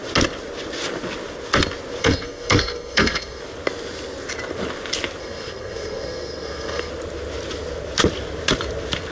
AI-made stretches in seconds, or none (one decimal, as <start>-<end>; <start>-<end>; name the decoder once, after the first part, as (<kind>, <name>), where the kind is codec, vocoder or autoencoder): 2.0-3.4 (codec, SNAC); 5.2-6.9